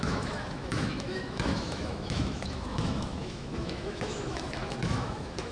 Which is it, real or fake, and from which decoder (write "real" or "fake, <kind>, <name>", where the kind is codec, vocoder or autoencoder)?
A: fake, autoencoder, DAC-VAE